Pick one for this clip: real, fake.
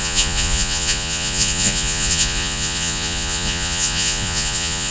fake